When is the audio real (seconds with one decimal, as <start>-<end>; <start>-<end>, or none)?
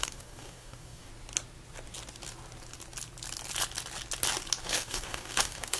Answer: 1.1-4.6